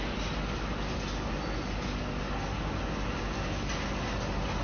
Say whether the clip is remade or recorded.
recorded